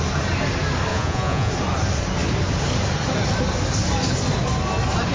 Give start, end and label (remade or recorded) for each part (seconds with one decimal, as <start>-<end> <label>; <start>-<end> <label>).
0.0-0.9 recorded; 0.9-1.5 remade; 1.5-5.1 recorded